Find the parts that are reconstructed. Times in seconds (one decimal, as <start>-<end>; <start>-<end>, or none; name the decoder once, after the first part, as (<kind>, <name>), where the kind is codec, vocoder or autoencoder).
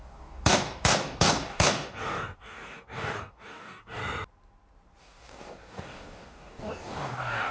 0.0-4.0 (codec, DAC); 5.0-7.5